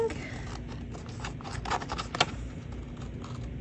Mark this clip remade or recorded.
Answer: recorded